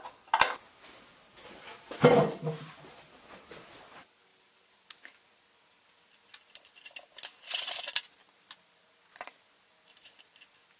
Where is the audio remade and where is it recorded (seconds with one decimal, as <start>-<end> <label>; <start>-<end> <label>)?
0.0-10.8 recorded